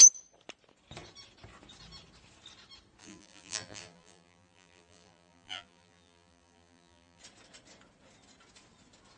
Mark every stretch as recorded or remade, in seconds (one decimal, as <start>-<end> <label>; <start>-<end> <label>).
0.0-3.0 recorded; 3.0-7.2 remade; 7.2-9.2 recorded